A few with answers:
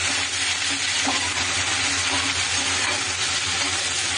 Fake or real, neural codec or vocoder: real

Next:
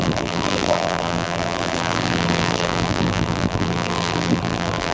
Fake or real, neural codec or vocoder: fake, vocoder, BigVGAN v2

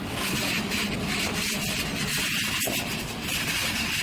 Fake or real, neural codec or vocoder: real